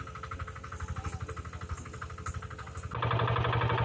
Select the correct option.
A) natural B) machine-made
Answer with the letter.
A